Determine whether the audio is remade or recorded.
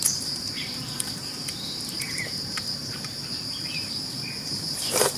remade